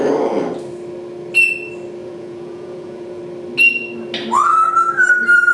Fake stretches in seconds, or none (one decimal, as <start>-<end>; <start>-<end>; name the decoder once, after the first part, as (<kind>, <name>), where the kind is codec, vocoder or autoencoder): 2.0-3.2 (vocoder, Vocos)